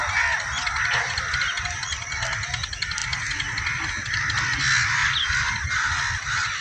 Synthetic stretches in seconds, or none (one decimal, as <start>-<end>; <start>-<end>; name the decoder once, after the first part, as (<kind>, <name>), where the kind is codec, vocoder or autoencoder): none